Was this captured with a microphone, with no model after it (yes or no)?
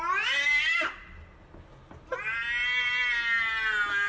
yes